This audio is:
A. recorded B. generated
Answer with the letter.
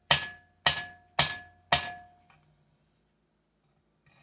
A